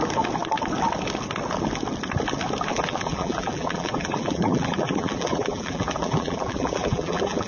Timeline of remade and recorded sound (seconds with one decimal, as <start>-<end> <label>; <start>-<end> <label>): 0.0-2.7 recorded; 2.7-7.5 remade